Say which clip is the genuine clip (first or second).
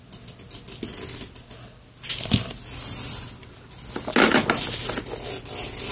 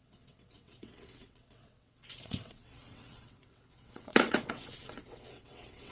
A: first